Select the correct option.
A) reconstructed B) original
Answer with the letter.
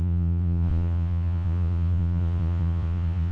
A